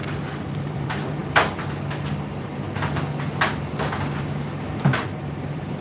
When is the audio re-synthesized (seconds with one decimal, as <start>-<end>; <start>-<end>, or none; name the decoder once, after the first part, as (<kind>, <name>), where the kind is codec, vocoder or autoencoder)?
0.6-1.2 (vocoder, BigVGAN v2); 4.7-5.8